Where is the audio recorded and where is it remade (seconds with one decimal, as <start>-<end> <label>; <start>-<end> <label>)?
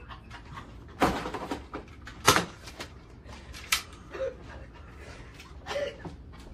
0.0-2.1 recorded; 2.1-4.3 remade; 4.3-6.5 recorded